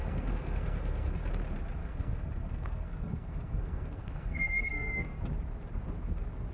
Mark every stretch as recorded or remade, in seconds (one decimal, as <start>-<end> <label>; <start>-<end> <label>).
0.0-1.3 remade; 1.3-1.8 recorded; 1.8-5.2 remade; 5.2-6.5 recorded